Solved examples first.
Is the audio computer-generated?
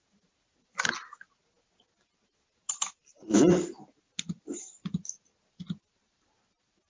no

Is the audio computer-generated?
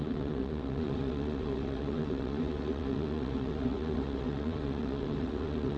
yes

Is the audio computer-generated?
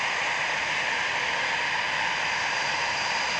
no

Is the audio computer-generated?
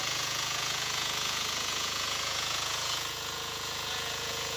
yes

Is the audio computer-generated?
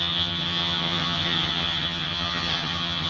yes